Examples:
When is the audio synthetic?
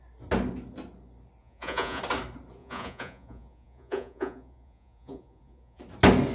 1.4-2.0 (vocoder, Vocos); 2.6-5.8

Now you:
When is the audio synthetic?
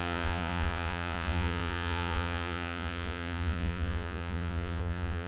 0.0-5.3 (vocoder, Vocos)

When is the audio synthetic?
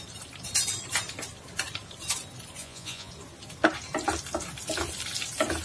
2.6-3.1 (vocoder, Vocos)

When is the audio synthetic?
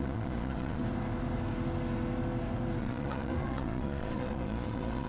0.0-0.8 (vocoder, Vocos); 2.8-5.1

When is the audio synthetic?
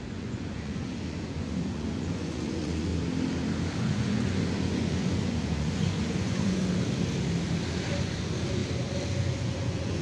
0.0-2.9 (vocoder, Vocos); 3.8-6.6; 8.0-8.6; 9.1-10.0